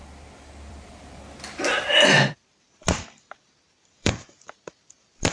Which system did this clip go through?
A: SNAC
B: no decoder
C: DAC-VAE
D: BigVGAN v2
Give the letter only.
D